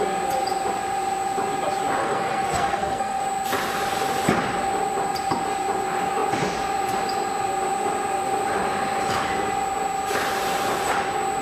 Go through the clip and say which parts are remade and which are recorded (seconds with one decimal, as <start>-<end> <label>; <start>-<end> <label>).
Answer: 0.0-2.0 recorded; 2.0-3.2 remade; 3.2-11.4 recorded